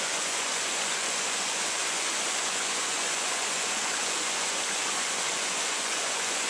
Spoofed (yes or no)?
yes